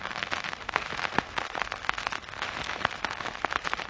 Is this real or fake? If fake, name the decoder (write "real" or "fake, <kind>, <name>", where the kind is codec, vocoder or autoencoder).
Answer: fake, autoencoder, DAC-VAE